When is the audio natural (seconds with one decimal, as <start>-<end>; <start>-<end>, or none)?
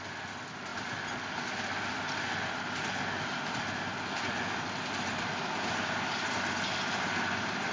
0.0-7.7